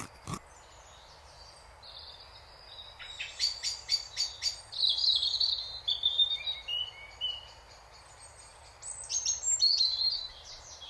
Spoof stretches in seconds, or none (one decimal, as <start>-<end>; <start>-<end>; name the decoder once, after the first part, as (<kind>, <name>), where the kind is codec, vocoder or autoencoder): 9.1-9.6 (vocoder, BigVGAN v2)